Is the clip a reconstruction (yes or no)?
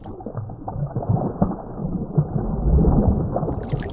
no